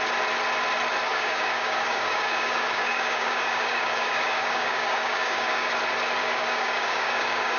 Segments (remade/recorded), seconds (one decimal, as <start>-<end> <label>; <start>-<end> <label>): 0.0-1.1 recorded; 1.1-5.7 remade; 5.7-6.2 recorded; 6.2-7.6 remade